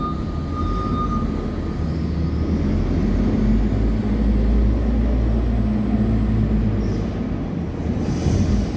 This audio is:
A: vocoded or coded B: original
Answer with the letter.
B